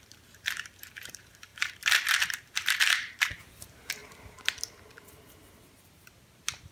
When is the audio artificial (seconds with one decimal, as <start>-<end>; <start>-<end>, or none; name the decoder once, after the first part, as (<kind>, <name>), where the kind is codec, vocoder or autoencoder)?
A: 0.0-4.0 (vocoder, BigVGAN v2); 5.6-6.7